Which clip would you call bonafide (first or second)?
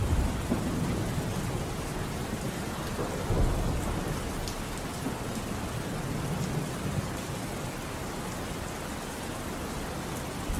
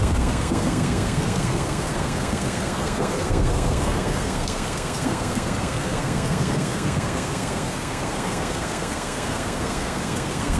first